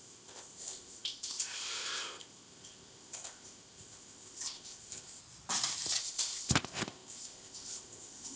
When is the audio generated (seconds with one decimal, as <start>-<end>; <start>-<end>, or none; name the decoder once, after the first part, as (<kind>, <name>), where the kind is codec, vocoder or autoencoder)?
0.0-5.2 (codec, ZipCodec); 6.0-8.4